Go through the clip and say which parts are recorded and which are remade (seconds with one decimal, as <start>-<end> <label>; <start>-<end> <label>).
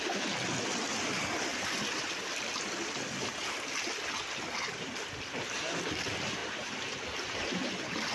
0.0-8.1 recorded